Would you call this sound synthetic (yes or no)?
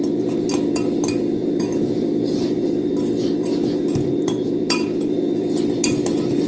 no